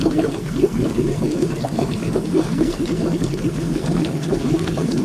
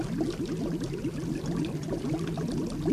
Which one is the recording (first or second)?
second